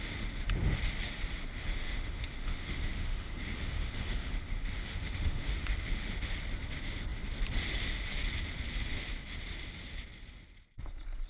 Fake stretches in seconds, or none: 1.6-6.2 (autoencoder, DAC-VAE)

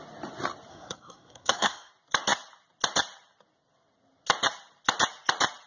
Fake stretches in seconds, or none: 0.7-1.9 (codec, SNAC)

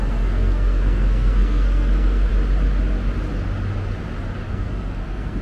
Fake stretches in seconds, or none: 0.0-2.3 (codec, SNAC); 4.5-5.4

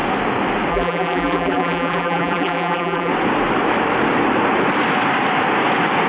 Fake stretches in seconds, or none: 0.7-3.1 (vocoder, BigVGAN v2)

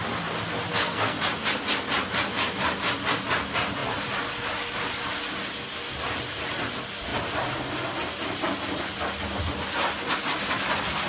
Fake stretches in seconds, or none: 0.7-1.2 (codec, SNAC)